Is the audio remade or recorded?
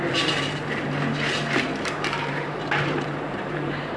remade